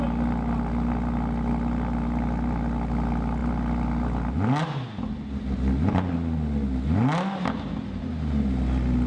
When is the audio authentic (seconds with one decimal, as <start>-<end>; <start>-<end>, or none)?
0.0-9.1